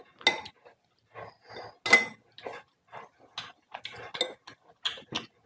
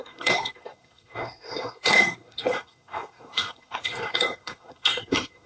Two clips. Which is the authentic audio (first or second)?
first